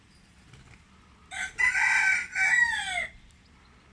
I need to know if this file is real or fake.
real